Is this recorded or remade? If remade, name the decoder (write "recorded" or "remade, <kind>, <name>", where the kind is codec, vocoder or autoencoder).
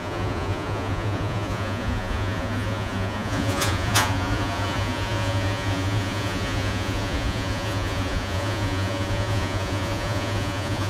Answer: remade, vocoder, Vocos